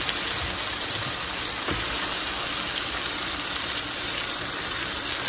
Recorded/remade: recorded